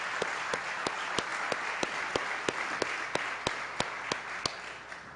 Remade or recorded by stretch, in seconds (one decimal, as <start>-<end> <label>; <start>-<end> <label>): 0.0-5.2 recorded